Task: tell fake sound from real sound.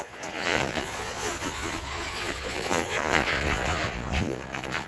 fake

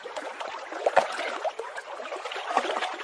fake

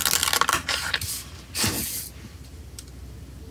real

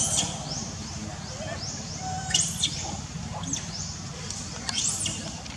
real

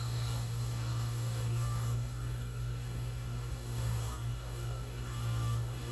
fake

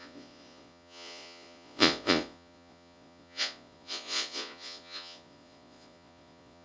fake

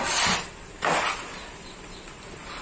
real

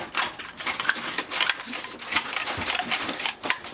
real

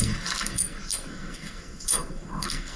fake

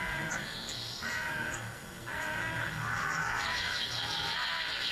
fake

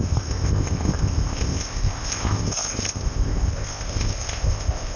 fake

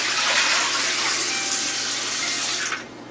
real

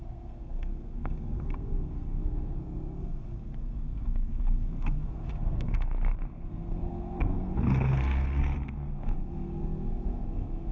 fake